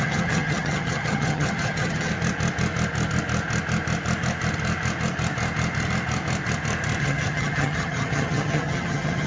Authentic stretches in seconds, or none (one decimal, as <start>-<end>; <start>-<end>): 2.1-7.0